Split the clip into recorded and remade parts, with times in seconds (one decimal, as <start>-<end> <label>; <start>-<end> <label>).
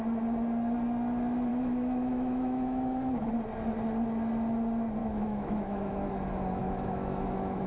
0.0-1.5 recorded; 1.5-3.3 remade; 3.3-5.0 recorded; 5.0-6.1 remade; 6.1-6.6 recorded; 6.6-7.7 remade